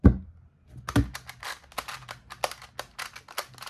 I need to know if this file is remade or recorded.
recorded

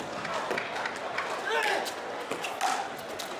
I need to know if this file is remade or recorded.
recorded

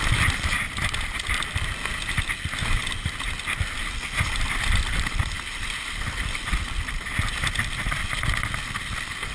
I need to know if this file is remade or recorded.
recorded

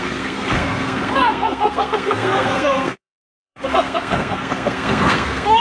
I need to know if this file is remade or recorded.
remade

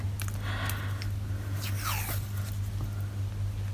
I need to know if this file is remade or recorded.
recorded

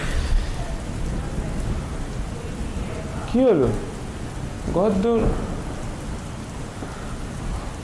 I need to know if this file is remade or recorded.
recorded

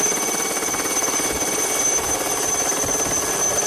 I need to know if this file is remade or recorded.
recorded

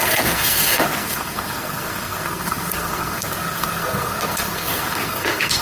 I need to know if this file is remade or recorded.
remade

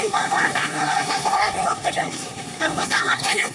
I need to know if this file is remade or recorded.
remade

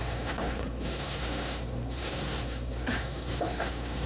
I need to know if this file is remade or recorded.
remade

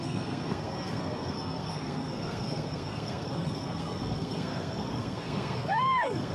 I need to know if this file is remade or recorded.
remade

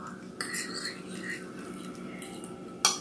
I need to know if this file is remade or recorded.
recorded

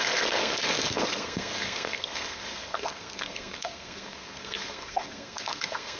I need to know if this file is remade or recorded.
remade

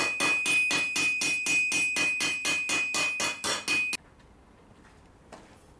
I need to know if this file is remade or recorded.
recorded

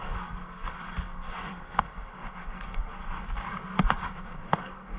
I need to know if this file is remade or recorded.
remade